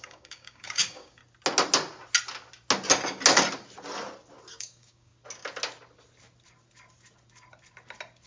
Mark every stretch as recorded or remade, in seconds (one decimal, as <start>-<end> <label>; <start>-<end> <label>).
0.0-1.2 remade; 1.2-4.5 recorded; 4.5-5.1 remade; 5.1-8.3 recorded